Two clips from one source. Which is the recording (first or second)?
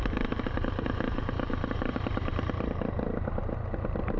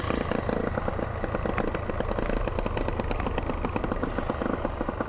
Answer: second